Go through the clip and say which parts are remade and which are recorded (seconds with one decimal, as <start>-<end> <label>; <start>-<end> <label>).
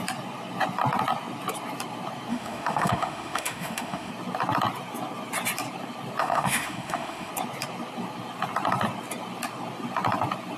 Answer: 0.0-2.3 recorded; 2.3-4.1 remade; 4.1-6.2 recorded; 6.2-7.3 remade; 7.3-10.6 recorded